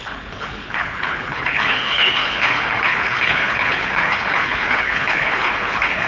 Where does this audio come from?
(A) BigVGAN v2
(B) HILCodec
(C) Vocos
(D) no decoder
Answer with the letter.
B